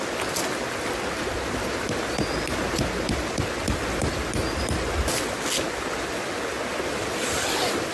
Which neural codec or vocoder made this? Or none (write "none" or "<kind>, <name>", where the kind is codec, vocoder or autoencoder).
none